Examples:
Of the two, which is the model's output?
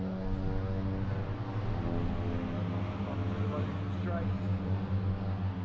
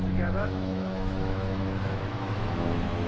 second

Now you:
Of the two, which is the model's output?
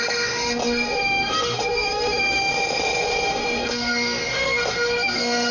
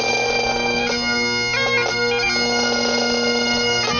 first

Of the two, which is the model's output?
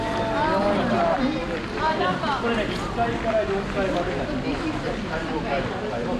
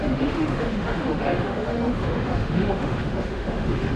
second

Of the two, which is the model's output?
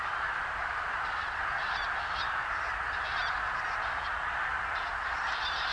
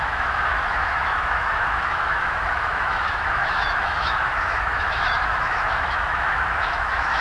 second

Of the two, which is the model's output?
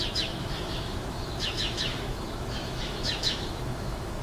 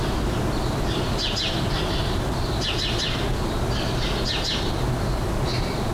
first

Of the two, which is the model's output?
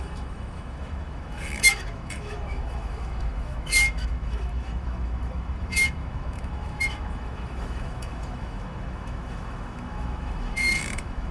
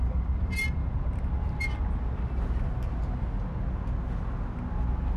first